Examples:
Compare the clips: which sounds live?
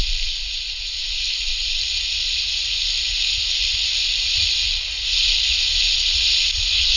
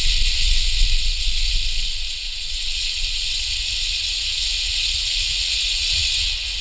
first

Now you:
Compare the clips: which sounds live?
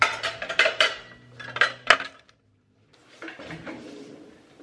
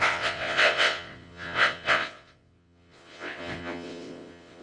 first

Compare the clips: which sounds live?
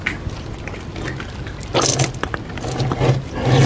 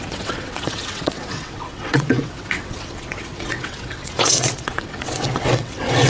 first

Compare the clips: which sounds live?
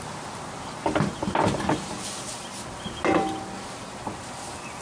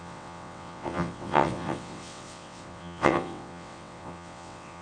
first